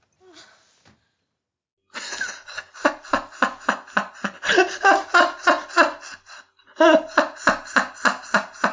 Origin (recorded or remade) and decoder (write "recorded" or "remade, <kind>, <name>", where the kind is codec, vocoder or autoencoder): recorded